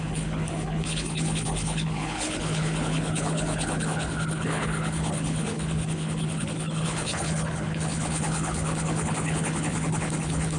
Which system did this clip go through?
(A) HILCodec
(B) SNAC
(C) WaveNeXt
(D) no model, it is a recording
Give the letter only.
A